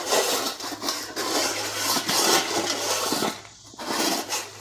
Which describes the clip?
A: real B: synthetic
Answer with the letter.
A